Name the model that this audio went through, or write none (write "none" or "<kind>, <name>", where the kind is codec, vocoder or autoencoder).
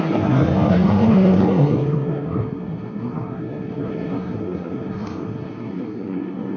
codec, SNAC